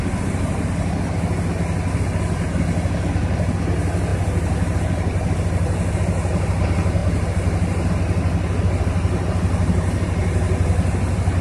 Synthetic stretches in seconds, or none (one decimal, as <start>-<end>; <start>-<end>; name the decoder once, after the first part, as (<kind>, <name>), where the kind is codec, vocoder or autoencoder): none